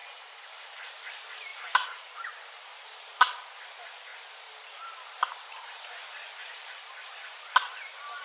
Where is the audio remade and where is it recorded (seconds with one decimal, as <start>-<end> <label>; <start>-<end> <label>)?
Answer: 0.0-0.5 recorded; 0.5-8.2 remade